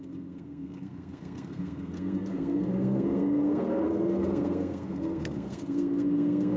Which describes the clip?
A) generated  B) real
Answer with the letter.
A